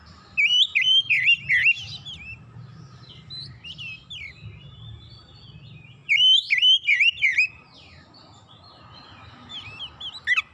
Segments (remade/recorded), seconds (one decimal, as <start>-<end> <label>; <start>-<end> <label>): 0.0-10.5 recorded